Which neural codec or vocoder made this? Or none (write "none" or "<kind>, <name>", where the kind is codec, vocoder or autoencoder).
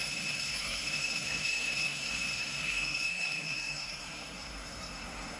codec, SNAC